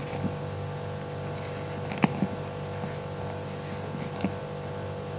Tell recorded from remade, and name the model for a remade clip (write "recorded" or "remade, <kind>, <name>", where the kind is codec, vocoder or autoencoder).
recorded